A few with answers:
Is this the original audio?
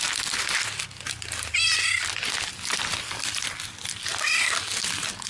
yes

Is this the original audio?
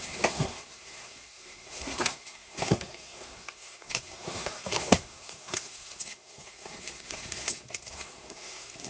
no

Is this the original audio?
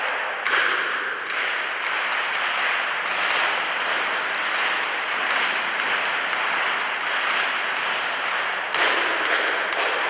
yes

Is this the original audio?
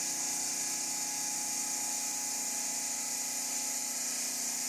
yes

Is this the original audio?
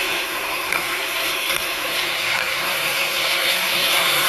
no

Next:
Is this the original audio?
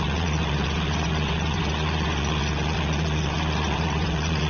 no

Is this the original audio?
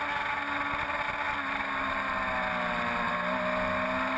yes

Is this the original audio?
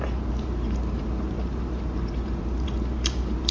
no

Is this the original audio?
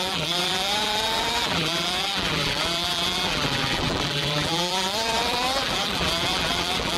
no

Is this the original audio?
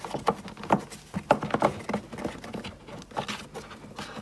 yes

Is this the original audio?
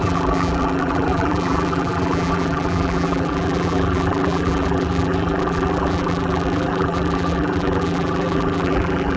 no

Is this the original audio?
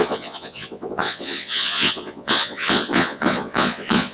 no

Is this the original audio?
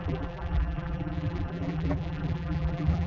no